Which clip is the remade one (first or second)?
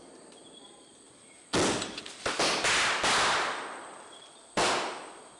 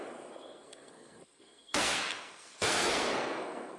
second